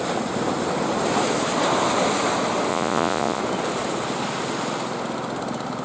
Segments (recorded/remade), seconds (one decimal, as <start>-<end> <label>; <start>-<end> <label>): 0.0-2.7 recorded; 2.7-3.4 remade; 3.4-5.8 recorded